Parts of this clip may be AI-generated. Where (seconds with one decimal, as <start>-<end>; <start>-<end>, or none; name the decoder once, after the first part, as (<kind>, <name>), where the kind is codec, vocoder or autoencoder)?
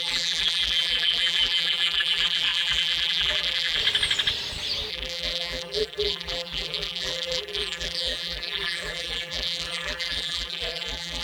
0.0-3.8 (vocoder, BigVGAN v2); 4.9-11.2